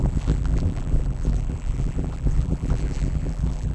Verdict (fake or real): fake